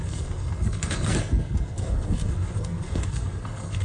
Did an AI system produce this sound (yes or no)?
yes